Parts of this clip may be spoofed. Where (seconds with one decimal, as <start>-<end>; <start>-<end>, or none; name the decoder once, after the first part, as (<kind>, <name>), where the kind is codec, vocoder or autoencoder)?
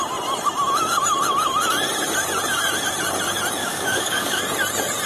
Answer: 3.6-4.4 (codec, DAC)